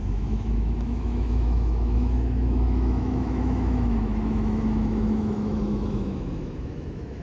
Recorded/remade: remade